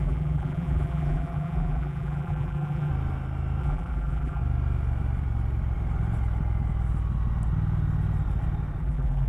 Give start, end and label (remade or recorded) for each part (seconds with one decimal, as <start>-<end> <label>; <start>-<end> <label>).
0.0-2.9 remade; 2.9-3.6 recorded; 3.6-4.4 remade; 4.4-8.8 recorded; 8.8-9.3 remade